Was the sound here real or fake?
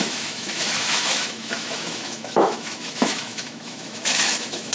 fake